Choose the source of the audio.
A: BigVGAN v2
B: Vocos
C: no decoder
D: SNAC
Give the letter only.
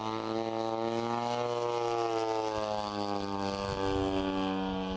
C